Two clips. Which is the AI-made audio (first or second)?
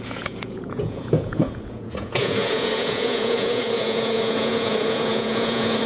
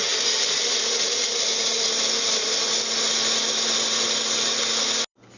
first